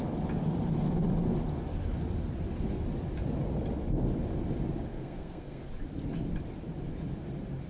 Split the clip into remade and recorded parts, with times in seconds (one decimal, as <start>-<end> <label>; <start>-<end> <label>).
0.0-4.9 recorded; 4.9-5.6 remade; 5.6-7.7 recorded